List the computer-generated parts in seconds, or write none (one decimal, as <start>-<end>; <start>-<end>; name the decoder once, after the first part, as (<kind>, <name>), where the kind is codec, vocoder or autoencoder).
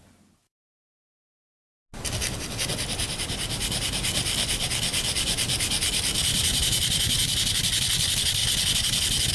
none